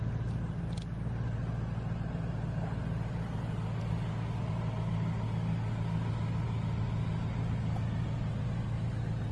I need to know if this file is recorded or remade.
recorded